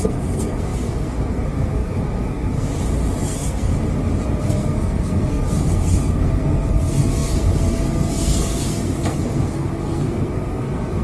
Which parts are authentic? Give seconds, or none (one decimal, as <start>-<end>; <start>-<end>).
2.7-3.2; 3.7-4.4